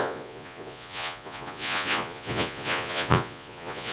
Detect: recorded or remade remade